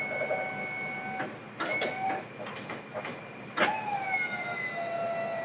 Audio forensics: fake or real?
real